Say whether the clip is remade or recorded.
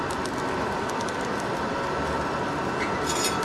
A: recorded